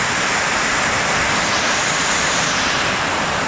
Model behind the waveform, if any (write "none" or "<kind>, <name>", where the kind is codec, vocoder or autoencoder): vocoder, BigVGAN v2